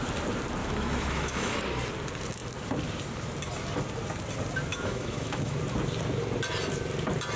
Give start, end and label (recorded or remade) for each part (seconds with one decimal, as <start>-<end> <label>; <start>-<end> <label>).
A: 0.0-0.6 recorded; 0.6-1.6 remade; 1.6-4.7 recorded; 4.7-5.6 remade; 5.6-7.4 recorded